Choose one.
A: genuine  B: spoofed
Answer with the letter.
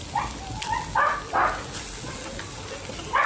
A